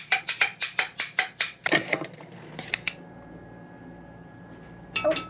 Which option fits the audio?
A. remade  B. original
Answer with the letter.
B